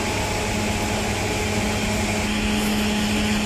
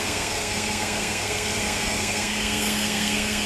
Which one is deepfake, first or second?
second